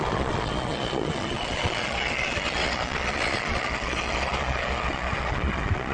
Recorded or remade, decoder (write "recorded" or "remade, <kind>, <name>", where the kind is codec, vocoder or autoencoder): remade, vocoder, Vocos